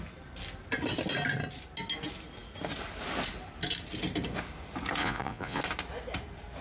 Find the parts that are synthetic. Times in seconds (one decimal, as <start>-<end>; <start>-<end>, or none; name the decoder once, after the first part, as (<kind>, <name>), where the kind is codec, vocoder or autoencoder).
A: 5.0-5.6 (vocoder, Vocos)